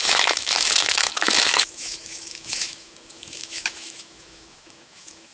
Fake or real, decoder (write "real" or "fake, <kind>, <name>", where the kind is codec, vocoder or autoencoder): fake, autoencoder, DAC-VAE